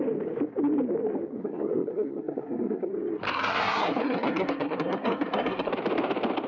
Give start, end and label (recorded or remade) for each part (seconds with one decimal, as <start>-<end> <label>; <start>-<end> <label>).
0.0-1.4 recorded; 1.4-2.9 remade; 2.9-3.3 recorded; 3.3-5.7 remade; 5.7-6.5 recorded